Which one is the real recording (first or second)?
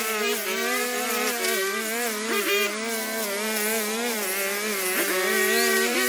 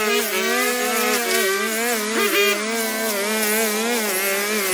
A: second